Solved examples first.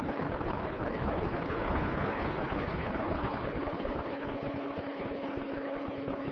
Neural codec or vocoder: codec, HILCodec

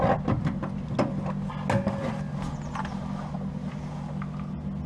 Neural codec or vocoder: none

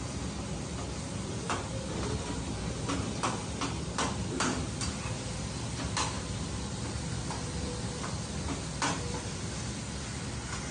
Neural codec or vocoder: none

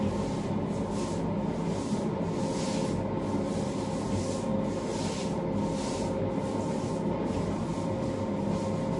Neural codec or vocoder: none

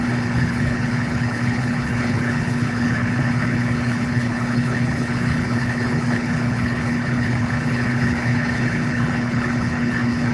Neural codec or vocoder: codec, HILCodec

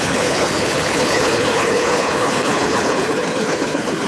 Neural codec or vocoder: codec, HILCodec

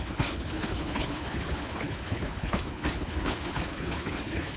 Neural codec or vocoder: codec, HILCodec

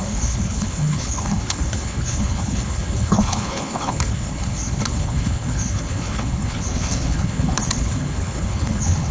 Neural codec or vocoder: codec, HILCodec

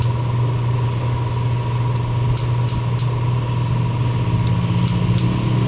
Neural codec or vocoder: none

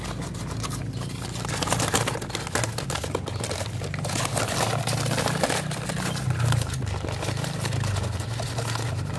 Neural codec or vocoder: none